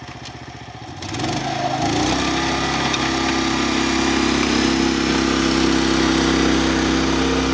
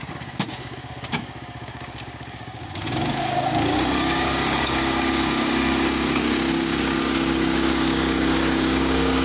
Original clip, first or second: first